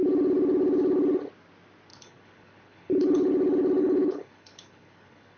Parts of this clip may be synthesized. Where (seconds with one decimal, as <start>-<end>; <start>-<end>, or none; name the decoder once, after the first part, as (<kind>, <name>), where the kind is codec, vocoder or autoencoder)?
1.9-3.3 (codec, HILCodec); 3.8-5.4